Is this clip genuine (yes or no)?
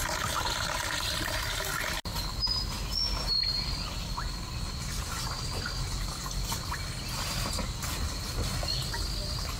yes